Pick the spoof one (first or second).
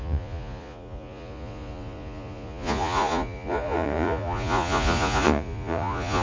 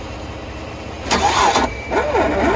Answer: first